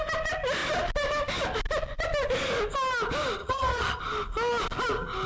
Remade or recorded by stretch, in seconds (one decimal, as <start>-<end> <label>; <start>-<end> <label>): 0.0-3.4 recorded; 3.4-4.0 remade; 4.0-5.3 recorded